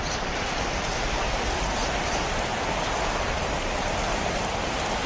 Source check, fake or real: real